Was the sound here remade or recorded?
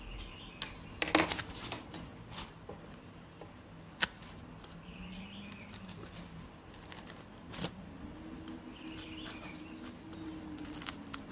recorded